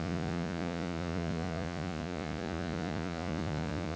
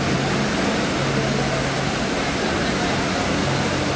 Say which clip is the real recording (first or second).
second